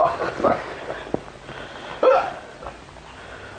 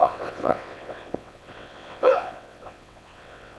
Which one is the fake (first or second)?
second